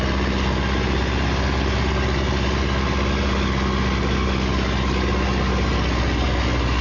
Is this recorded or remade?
recorded